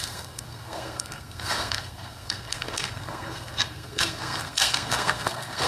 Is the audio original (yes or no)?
no